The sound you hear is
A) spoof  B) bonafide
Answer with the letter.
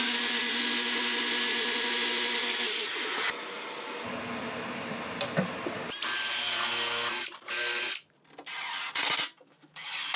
B